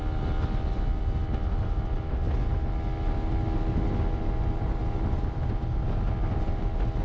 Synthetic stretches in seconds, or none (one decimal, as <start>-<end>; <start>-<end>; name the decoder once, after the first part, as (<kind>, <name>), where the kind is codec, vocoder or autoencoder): none